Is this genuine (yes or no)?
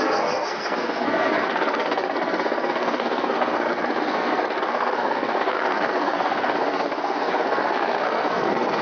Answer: no